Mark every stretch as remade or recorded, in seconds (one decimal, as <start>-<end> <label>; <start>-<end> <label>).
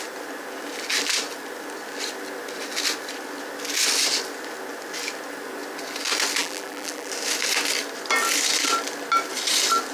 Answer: 0.0-6.4 recorded; 6.4-7.1 remade; 7.1-9.9 recorded